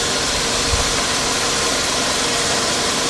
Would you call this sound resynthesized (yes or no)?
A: no